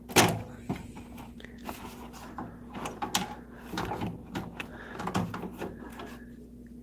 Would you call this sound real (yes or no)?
yes